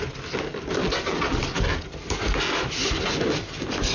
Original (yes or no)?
yes